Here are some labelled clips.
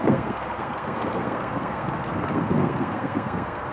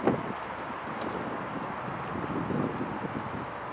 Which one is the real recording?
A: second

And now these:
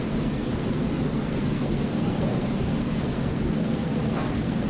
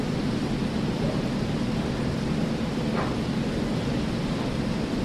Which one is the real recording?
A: second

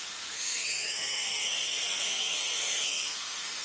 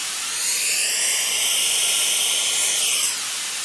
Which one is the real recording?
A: second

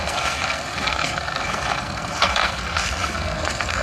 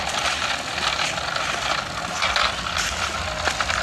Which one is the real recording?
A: second